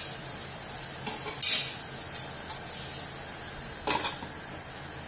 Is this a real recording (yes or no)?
yes